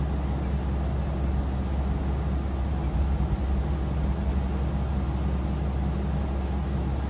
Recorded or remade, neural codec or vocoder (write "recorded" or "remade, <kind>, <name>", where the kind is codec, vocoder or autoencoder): recorded